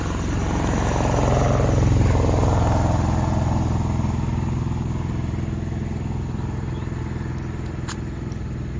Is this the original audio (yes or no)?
yes